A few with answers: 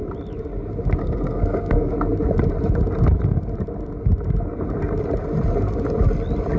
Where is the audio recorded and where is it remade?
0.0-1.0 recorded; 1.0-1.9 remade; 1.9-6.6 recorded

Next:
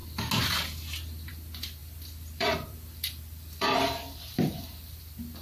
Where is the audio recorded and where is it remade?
0.0-1.8 recorded; 1.8-5.0 remade; 5.0-5.4 recorded

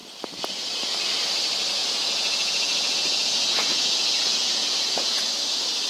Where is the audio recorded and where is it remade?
0.0-1.8 recorded; 1.8-5.3 remade; 5.3-5.9 recorded

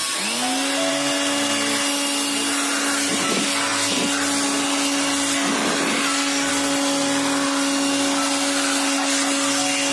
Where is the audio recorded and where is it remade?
0.0-9.9 recorded

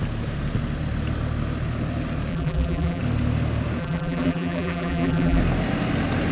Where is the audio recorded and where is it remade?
0.0-2.3 recorded; 2.3-3.0 remade; 3.0-3.8 recorded; 3.8-5.4 remade; 5.4-6.3 recorded

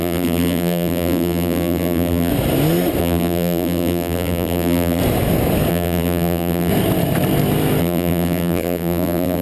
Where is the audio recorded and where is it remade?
0.0-2.3 remade; 2.3-3.0 recorded; 3.0-5.0 remade; 5.0-5.7 recorded; 5.7-6.7 remade; 6.7-7.8 recorded; 7.8-9.4 remade

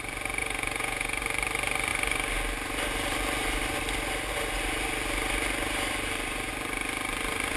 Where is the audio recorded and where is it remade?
0.0-0.4 recorded; 0.4-1.2 remade; 1.2-7.6 recorded